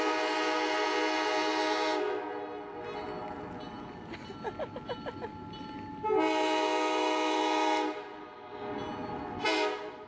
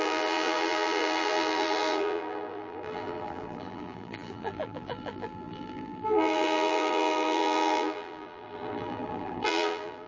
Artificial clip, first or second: second